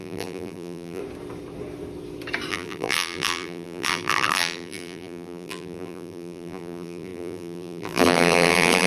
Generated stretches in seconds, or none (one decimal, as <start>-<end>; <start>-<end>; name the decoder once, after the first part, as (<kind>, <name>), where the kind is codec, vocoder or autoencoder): 0.0-1.0 (vocoder, BigVGAN v2); 2.5-8.9